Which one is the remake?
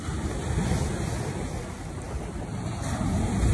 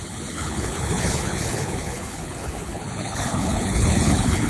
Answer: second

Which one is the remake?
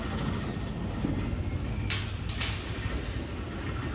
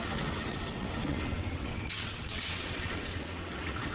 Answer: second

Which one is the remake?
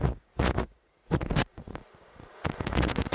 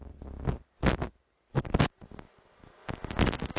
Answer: first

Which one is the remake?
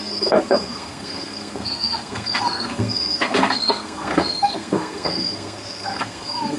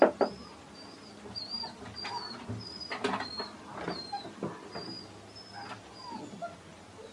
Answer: first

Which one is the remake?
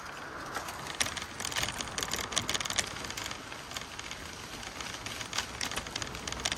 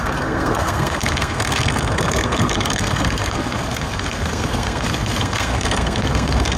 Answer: second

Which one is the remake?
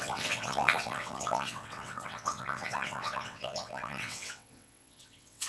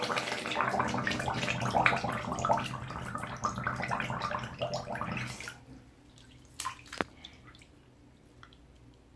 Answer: first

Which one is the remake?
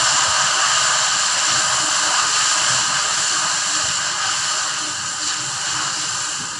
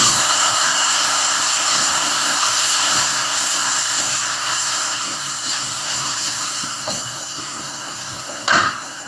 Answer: second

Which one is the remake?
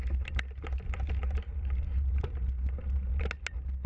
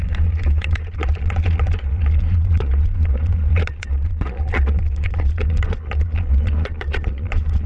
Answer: second